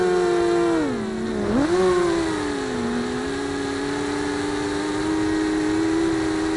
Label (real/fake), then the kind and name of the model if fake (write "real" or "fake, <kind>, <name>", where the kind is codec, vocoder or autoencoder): real